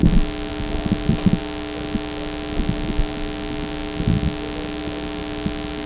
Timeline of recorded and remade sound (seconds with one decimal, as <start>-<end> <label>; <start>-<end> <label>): 0.0-5.9 recorded